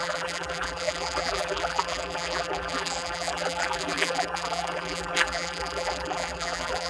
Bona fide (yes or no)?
no